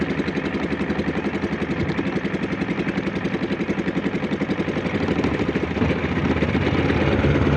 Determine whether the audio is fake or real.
real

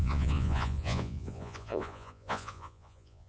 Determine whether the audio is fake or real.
fake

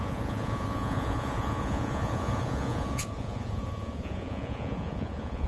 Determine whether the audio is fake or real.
fake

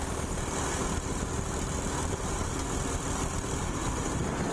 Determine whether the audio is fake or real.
real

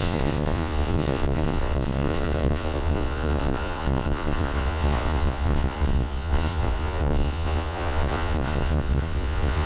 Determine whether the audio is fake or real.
fake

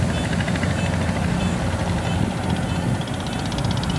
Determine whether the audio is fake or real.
real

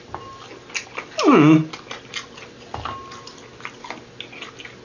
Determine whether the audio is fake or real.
real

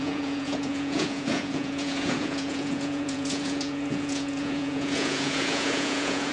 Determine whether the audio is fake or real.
fake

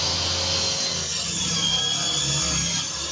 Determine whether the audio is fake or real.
real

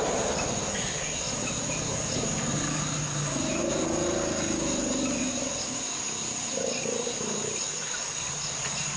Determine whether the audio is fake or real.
real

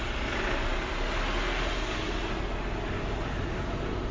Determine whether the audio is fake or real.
real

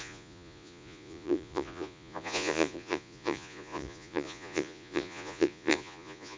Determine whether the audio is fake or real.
fake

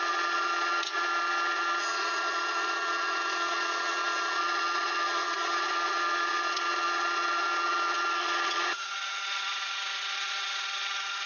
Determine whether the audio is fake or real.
fake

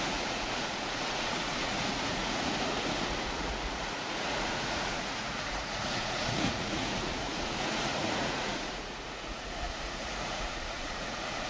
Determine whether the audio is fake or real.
fake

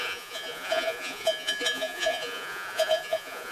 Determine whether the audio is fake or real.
fake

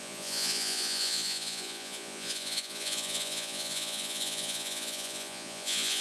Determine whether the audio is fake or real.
fake